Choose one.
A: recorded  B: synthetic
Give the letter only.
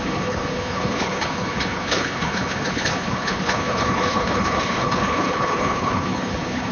B